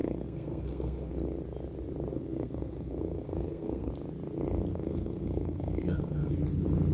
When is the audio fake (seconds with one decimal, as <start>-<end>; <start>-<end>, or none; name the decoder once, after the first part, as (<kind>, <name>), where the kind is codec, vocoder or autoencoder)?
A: 0.0-1.1 (codec, SNAC); 2.1-3.9; 4.7-6.3